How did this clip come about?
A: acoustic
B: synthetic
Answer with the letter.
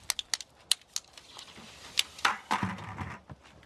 A